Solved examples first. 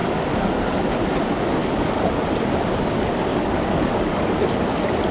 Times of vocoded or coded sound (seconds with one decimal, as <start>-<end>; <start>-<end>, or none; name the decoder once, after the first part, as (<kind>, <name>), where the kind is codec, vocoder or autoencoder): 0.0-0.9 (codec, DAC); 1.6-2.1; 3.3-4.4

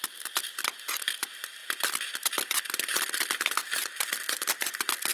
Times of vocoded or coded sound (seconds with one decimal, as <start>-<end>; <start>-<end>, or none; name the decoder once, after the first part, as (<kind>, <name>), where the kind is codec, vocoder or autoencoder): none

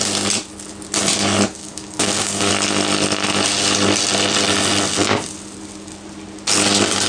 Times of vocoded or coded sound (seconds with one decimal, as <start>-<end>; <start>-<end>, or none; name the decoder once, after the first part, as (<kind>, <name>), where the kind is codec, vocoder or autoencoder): 1.6-2.5 (codec, DAC)